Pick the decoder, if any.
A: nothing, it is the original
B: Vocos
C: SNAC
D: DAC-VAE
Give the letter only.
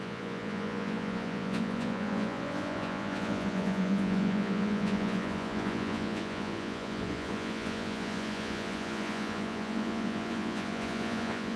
B